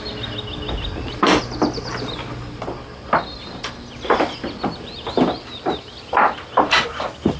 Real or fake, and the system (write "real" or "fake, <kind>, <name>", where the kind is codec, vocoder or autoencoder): real